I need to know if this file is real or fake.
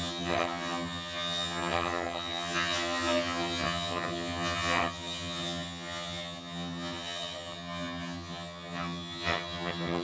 fake